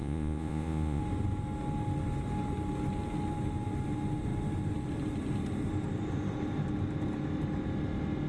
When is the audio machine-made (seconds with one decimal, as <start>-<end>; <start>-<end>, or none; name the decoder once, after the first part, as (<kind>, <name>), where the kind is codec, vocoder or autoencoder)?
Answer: 0.0-1.0 (vocoder, Vocos)